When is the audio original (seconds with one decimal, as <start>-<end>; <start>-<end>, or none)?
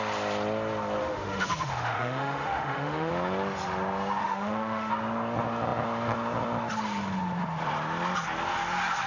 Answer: 0.0-1.0; 3.1-4.2; 4.9-9.1